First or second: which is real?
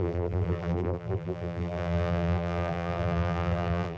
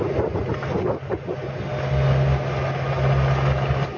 second